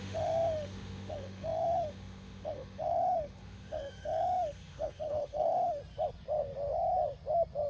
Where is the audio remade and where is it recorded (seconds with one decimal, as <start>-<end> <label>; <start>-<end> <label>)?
0.0-5.8 remade; 5.8-7.7 recorded